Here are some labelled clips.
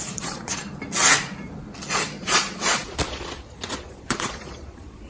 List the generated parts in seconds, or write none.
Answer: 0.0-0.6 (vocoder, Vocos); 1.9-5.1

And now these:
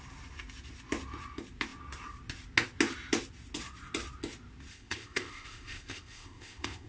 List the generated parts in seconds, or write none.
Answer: 4.7-6.9 (codec, ZipCodec)

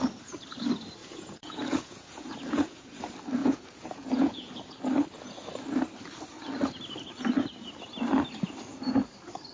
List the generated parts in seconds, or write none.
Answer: 1.0-3.0 (vocoder, Vocos); 3.4-4.5